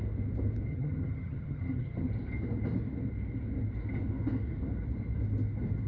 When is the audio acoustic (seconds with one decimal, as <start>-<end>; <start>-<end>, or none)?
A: 0.0-0.7; 2.1-5.9